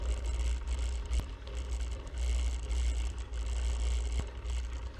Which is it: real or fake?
real